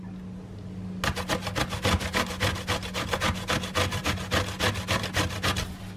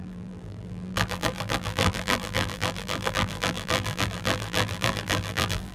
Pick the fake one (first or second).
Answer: second